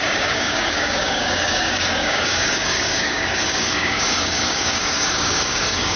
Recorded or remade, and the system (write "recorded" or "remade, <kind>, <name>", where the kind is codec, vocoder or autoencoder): remade, codec, DAC